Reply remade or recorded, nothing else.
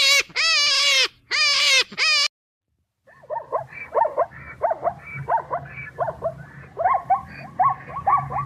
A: recorded